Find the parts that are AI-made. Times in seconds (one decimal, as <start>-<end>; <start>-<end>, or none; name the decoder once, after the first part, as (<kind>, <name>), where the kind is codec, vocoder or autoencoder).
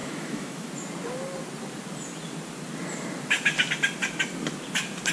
0.0-0.7 (autoencoder, DAC-VAE)